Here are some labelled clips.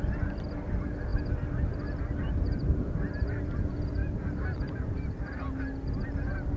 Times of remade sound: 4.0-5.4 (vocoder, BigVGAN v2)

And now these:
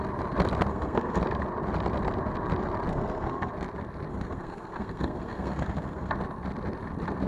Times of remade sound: 0.7-1.2 (codec, SNAC); 2.9-3.5; 4.1-6.1